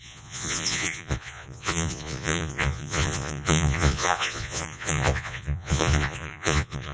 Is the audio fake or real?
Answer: fake